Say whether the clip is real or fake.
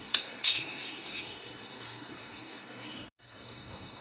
fake